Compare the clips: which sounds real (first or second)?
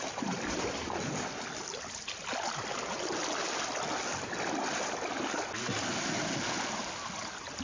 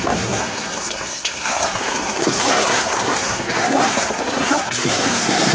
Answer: first